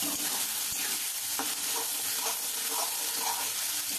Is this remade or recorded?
recorded